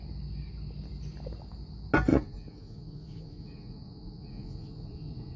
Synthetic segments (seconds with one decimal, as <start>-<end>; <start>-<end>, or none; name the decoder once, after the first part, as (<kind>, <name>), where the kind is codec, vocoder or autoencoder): 2.1-5.4 (vocoder, Vocos)